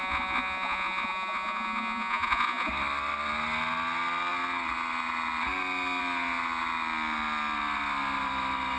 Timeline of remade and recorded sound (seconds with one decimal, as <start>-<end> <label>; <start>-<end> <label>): 0.0-2.7 remade; 2.7-8.8 recorded